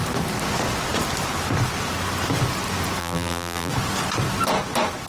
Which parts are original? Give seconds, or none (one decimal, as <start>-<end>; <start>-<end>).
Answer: 0.0-3.0; 3.7-5.1